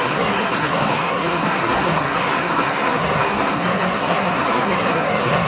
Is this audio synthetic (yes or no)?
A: yes